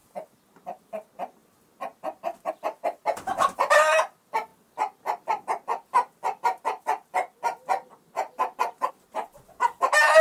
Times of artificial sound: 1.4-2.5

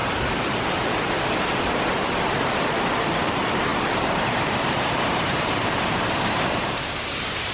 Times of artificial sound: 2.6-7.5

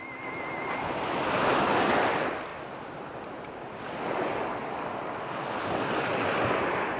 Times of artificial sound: none

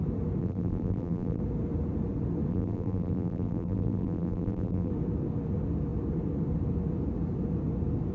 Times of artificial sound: 0.4-1.4; 2.5-4.9

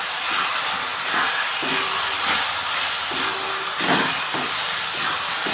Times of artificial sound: none